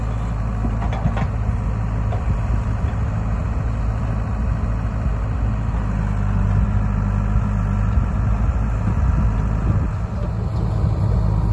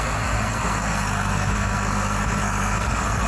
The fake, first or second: second